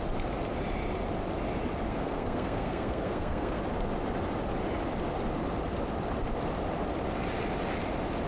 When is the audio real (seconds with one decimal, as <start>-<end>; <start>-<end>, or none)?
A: 0.0-1.9; 3.6-8.3